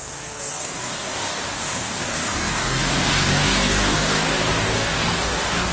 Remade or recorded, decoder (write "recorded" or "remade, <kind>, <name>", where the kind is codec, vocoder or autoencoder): remade, codec, DAC